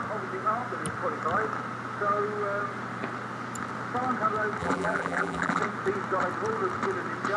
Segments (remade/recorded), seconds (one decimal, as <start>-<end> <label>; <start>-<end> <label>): 0.0-4.6 recorded; 4.6-5.6 remade; 5.6-7.4 recorded